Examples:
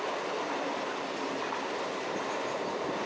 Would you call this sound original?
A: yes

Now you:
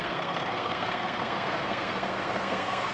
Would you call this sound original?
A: no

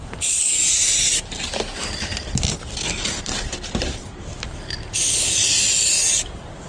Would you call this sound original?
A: yes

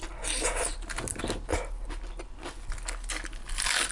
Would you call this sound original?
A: yes